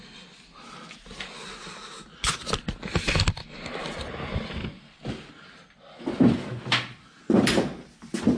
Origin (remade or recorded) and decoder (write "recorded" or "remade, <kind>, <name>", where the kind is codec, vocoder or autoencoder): recorded